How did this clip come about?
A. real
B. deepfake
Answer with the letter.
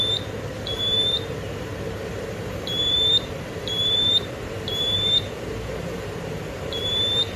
B